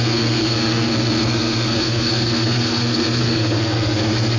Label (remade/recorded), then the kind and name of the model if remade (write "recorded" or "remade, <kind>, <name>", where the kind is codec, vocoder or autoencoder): remade, codec, SNAC